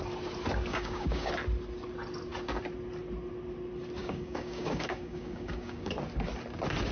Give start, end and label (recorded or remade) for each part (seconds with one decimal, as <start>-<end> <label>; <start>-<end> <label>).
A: 0.0-0.7 recorded; 0.7-1.3 remade; 1.3-4.0 recorded; 4.0-5.9 remade; 5.9-6.9 recorded